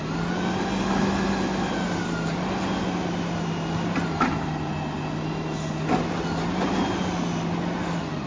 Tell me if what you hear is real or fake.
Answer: real